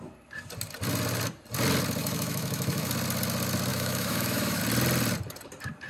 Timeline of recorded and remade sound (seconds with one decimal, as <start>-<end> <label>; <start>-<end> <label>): 0.0-2.0 recorded; 2.0-2.9 remade; 2.9-3.7 recorded; 3.7-4.6 remade; 4.6-5.9 recorded